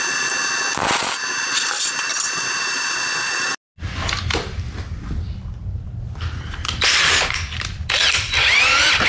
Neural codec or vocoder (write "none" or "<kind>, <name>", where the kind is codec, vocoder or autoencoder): none